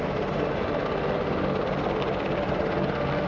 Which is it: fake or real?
real